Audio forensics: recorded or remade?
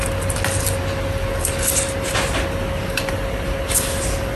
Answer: recorded